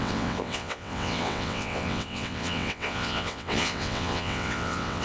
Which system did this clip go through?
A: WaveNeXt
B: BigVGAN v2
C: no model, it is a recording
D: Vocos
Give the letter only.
A